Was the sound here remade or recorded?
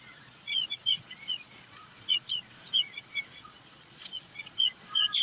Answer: remade